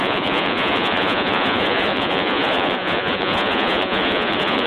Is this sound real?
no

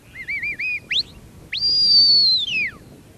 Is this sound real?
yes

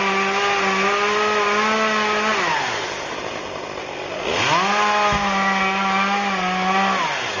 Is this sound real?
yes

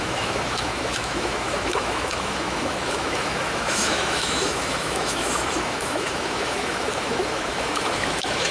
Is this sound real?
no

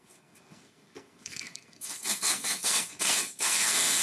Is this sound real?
no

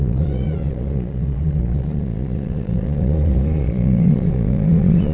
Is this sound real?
no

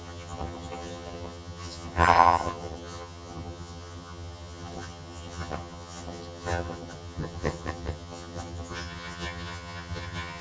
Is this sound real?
no